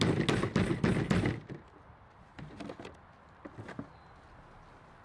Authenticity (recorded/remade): recorded